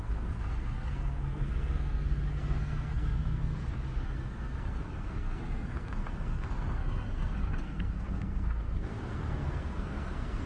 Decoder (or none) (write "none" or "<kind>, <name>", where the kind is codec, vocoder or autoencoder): codec, SNAC